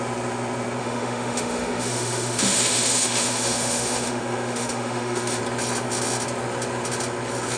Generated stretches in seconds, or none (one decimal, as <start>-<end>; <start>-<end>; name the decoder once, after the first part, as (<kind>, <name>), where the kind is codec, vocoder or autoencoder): 0.8-5.4 (autoencoder, DAC-VAE)